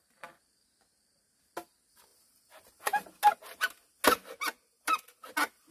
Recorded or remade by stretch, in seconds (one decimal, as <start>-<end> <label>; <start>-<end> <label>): 0.0-5.7 recorded